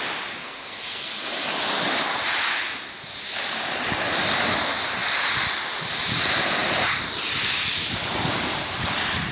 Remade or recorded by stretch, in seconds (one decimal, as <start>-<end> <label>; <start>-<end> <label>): 0.0-0.4 recorded; 0.4-1.1 remade; 1.1-9.3 recorded